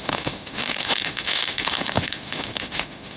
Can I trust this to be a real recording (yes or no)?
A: no